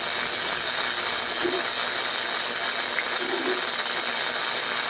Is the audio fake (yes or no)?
no